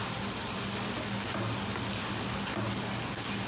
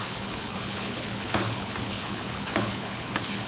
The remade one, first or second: second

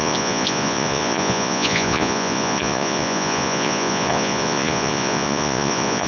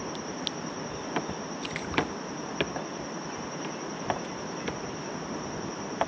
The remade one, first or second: first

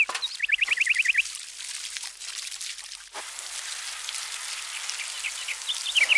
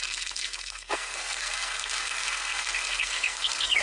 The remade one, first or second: second